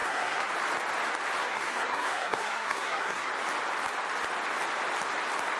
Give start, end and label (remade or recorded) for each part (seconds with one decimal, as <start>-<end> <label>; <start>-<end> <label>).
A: 0.0-0.5 remade; 0.5-1.4 recorded; 1.4-3.3 remade; 3.3-5.6 recorded